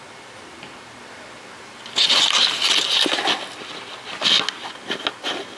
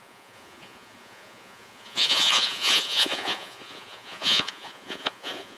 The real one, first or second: first